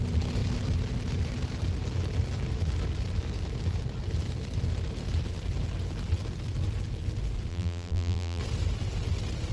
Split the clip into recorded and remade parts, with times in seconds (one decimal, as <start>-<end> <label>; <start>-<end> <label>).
0.0-7.5 recorded; 7.5-8.4 remade; 8.4-9.5 recorded